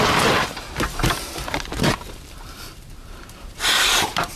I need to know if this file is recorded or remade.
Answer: remade